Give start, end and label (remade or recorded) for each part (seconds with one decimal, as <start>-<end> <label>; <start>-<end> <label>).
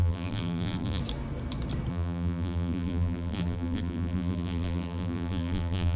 0.0-1.0 remade; 1.0-1.9 recorded; 1.9-6.0 remade